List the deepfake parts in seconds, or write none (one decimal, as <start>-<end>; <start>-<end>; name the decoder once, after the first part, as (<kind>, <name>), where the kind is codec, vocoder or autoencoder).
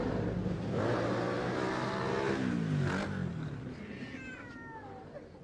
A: 3.3-4.5 (vocoder, BigVGAN v2)